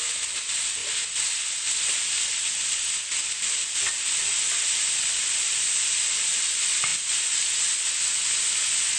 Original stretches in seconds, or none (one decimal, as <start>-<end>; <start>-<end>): 0.0-9.0